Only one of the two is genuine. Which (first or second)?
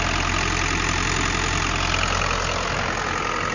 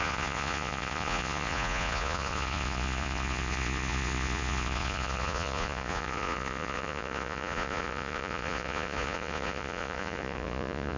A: first